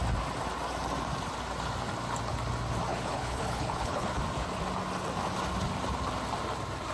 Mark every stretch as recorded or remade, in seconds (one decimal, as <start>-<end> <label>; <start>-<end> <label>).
0.0-2.9 recorded; 2.9-4.2 remade; 4.2-6.9 recorded